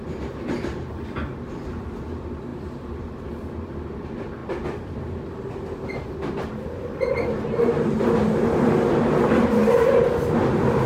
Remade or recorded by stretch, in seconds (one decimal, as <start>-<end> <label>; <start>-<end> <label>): 0.0-10.9 recorded